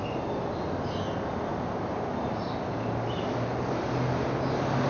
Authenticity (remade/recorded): recorded